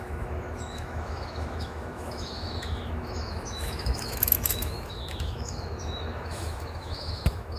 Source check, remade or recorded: remade